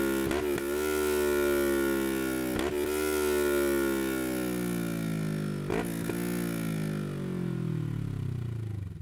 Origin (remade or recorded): recorded